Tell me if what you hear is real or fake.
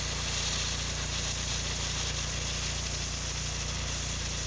real